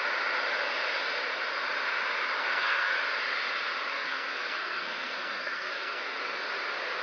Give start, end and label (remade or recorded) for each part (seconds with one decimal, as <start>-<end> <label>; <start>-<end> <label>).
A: 0.0-2.4 recorded; 2.4-2.9 remade; 2.9-3.9 recorded; 3.9-6.2 remade; 6.2-7.0 recorded